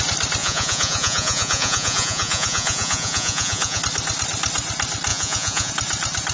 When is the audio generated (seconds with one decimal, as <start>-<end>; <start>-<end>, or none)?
0.4-3.8; 5.1-5.7